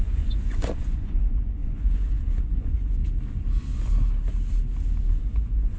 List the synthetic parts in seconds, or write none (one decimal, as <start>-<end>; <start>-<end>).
0.0-3.0; 5.1-5.8